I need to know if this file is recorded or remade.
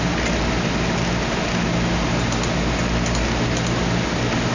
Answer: recorded